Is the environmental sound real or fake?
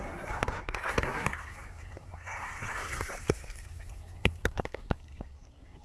fake